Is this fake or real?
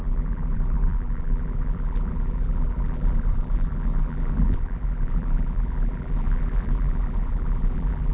fake